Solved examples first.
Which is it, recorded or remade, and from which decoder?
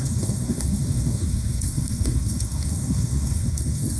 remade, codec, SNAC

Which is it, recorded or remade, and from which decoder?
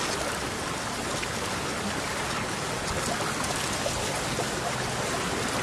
recorded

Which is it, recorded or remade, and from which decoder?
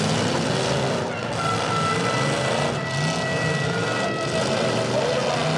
recorded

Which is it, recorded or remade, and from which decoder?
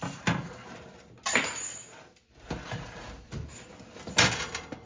recorded